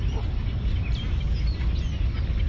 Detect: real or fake real